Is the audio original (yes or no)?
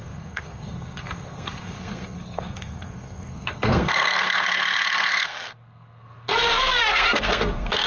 no